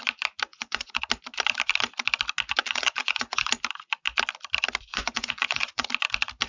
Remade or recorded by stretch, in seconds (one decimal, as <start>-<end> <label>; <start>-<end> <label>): 0.0-0.5 recorded; 0.5-1.0 remade; 1.0-2.6 recorded; 2.6-3.5 remade; 3.5-4.9 recorded; 4.9-5.9 remade; 5.9-6.5 recorded